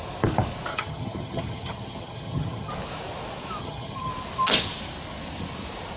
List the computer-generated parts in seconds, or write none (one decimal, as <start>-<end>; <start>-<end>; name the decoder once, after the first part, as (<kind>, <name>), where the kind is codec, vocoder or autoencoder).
0.7-2.7 (vocoder, HiFi-GAN); 3.6-4.1

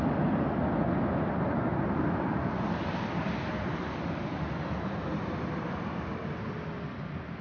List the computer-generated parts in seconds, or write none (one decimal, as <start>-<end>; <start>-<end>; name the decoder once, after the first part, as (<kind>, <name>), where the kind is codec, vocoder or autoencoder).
none